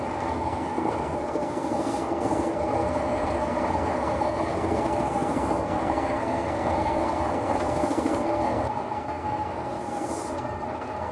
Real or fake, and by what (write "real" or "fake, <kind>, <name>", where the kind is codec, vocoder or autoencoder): fake, codec, SNAC